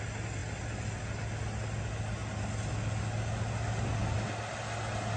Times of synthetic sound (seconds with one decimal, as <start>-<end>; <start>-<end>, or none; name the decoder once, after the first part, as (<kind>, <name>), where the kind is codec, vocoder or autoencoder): none